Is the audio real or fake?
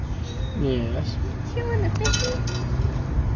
real